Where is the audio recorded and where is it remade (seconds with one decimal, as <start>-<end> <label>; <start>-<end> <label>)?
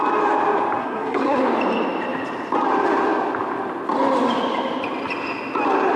0.0-0.8 recorded; 0.8-1.4 remade; 1.4-6.0 recorded